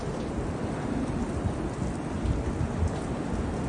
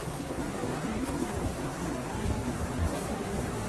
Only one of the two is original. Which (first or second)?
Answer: first